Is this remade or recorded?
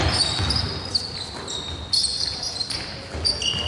recorded